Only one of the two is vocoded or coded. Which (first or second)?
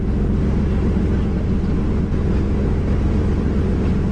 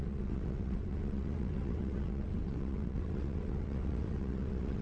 second